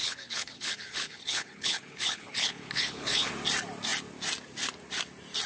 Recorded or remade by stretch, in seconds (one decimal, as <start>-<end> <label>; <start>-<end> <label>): 0.0-3.3 remade; 3.3-5.5 recorded